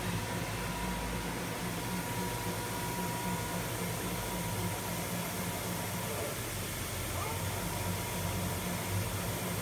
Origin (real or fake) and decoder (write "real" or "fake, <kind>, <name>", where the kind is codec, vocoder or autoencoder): real